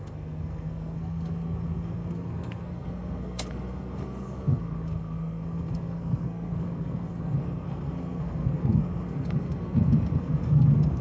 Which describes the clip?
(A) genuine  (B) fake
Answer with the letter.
B